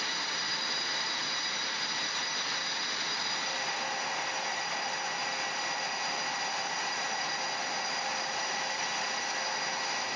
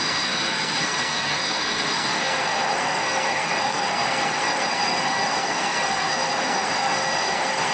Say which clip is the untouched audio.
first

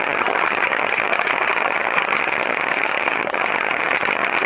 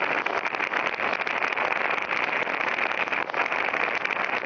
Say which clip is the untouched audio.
second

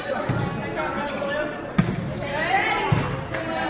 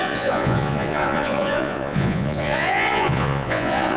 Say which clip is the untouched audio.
first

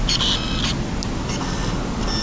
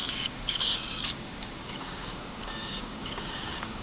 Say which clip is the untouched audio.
first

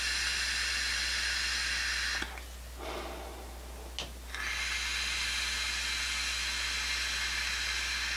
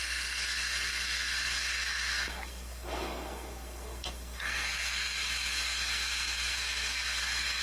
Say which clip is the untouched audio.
first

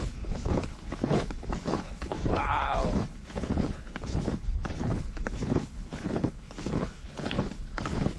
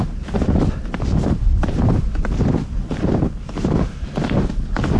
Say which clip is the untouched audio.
second